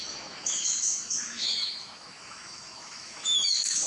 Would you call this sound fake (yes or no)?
yes